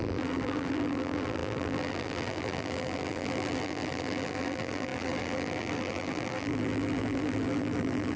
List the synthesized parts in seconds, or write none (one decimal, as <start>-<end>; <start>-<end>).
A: 0.0-8.2